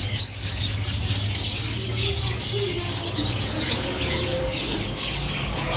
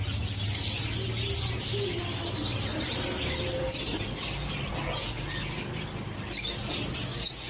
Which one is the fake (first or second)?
first